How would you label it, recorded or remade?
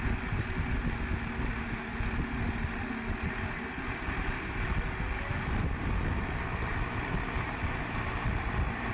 recorded